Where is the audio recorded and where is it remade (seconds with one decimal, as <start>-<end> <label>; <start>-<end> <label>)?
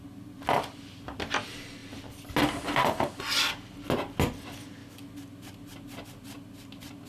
0.0-7.1 recorded